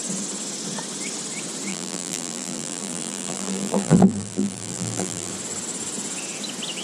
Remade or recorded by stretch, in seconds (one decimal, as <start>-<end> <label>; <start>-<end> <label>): 0.0-1.7 recorded; 1.7-5.3 remade; 5.3-6.8 recorded